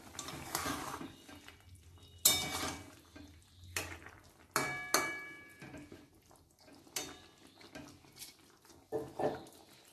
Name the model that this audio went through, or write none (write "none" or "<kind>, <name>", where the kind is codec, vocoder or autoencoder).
none